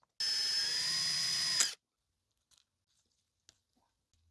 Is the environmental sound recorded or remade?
recorded